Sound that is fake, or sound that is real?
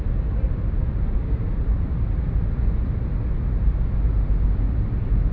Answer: real